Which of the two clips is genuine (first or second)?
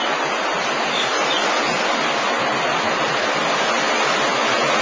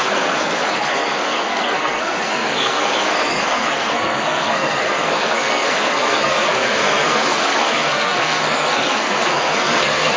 first